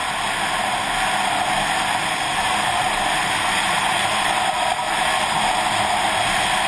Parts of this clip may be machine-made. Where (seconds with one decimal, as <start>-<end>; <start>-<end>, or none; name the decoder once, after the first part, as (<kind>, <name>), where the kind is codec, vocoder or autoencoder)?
2.3-5.7 (vocoder, BigVGAN v2)